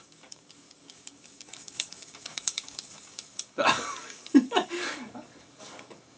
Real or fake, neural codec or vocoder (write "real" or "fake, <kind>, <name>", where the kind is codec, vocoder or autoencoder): fake, codec, DAC